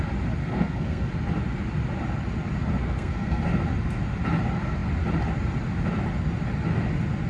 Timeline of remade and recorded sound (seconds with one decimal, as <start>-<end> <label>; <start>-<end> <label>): 0.0-0.4 recorded; 0.4-1.1 remade; 1.1-2.8 recorded; 2.8-3.4 remade; 3.4-7.3 recorded